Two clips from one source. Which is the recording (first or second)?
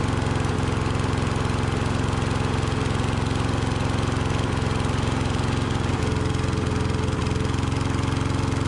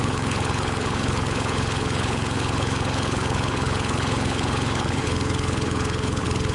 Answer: first